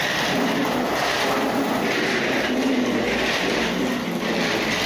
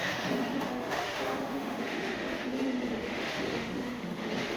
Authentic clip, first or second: first